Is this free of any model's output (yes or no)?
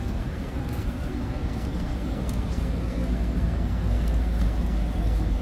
no